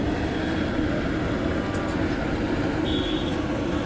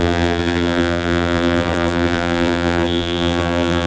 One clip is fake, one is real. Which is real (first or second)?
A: first